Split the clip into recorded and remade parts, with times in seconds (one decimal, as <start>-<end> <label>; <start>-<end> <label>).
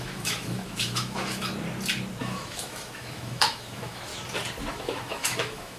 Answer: 0.0-1.5 remade; 1.5-2.2 recorded; 2.2-4.1 remade; 4.1-4.7 recorded; 4.7-5.8 remade